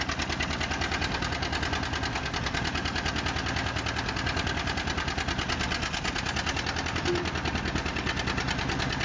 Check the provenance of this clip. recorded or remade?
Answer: recorded